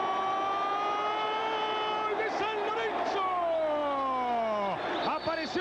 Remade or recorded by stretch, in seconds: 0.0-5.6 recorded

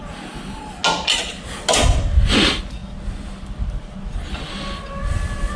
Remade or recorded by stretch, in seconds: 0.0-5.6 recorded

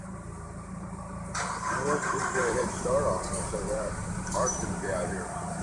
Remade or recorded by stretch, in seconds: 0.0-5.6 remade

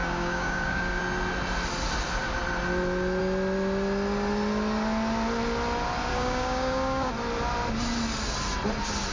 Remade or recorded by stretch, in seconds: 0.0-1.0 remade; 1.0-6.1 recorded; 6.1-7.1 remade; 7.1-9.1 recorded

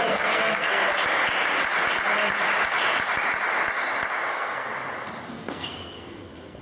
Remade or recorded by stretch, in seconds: 0.0-0.9 remade; 0.9-4.3 recorded; 4.3-4.7 remade; 4.7-5.3 recorded; 5.3-6.6 remade

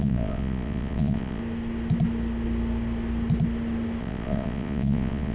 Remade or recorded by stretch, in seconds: 0.0-1.4 remade; 1.4-4.0 recorded; 4.0-5.3 remade